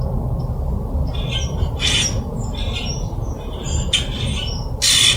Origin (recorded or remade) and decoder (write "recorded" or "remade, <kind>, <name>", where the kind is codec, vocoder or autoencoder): recorded